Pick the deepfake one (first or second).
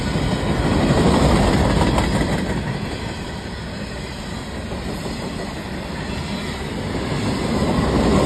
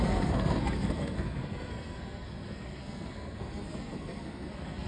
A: second